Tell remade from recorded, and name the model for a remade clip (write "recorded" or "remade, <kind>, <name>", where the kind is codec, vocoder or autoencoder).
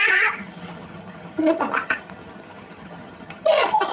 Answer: remade, vocoder, HiFi-GAN